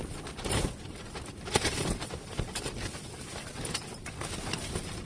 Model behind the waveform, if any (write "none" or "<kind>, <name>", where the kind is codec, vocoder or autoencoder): none